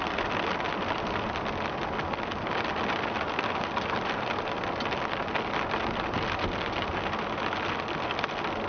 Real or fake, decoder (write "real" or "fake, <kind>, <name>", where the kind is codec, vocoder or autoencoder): real